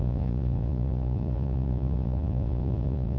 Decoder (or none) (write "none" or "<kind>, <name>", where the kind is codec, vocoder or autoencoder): vocoder, Vocos